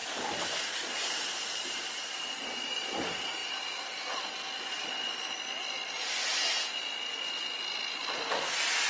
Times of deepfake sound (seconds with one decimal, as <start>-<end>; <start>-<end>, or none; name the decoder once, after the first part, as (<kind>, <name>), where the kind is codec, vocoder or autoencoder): 0.0-6.2 (vocoder, BigVGAN v2); 8.0-8.9